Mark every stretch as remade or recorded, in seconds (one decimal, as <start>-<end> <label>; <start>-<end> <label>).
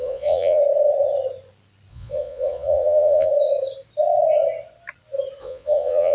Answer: 0.0-0.6 remade; 0.6-1.9 recorded; 1.9-3.3 remade; 3.3-5.4 recorded; 5.4-6.1 remade